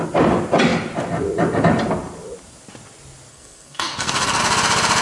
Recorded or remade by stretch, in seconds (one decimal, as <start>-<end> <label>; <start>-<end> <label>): 0.0-3.3 recorded; 3.3-4.4 remade; 4.4-5.0 recorded